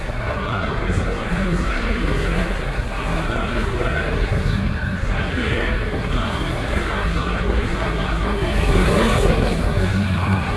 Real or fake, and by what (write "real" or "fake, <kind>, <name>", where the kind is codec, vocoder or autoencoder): fake, codec, SNAC